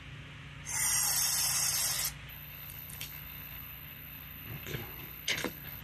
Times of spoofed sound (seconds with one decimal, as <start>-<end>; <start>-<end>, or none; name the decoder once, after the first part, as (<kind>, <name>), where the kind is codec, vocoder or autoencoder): 2.3-5.8 (codec, HILCodec)

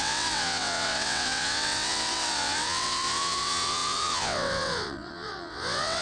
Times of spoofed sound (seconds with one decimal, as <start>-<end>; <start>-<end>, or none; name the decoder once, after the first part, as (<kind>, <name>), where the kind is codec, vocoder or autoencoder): 0.0-6.0 (vocoder, WaveNeXt)

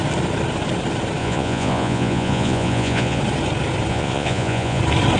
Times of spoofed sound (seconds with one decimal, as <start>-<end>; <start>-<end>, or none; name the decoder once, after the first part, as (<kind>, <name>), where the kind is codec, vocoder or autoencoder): 1.2-3.2 (vocoder, Vocos); 3.9-4.8